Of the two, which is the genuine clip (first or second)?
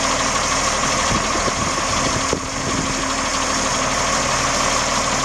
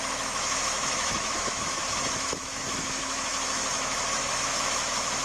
first